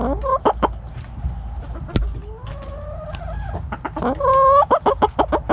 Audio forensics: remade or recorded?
recorded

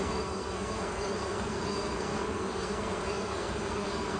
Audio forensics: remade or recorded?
remade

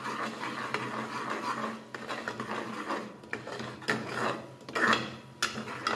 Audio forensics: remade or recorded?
recorded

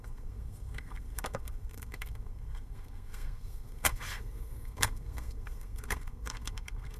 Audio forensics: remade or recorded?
remade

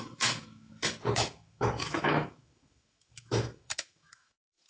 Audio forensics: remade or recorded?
remade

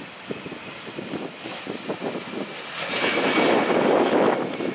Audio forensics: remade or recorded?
recorded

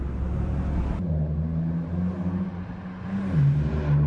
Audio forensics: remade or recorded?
recorded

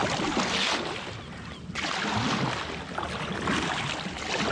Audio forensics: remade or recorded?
recorded